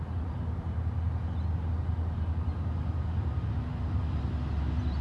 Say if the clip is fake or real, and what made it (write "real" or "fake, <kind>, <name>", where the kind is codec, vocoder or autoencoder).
real